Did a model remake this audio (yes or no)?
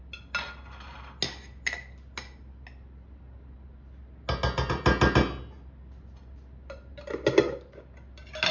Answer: no